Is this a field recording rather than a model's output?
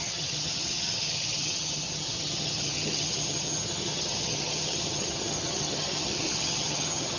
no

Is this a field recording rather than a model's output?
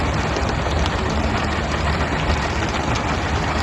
yes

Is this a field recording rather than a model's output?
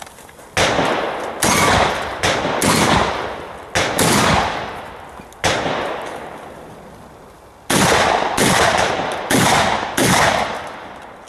yes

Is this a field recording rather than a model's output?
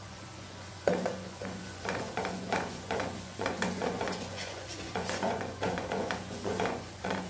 no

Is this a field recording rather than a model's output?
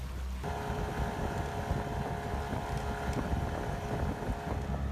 yes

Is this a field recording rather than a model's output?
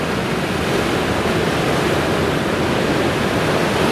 yes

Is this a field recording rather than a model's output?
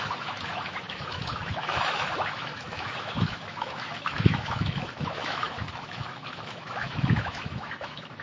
no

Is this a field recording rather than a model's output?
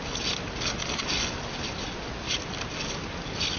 yes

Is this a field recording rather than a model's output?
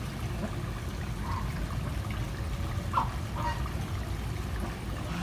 yes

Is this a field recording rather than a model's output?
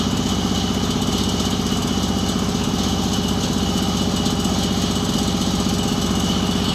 yes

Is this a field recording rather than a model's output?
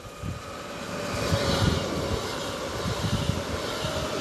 yes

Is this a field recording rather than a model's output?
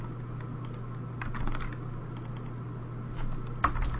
yes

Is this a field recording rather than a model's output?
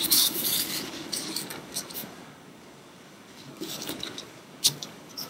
no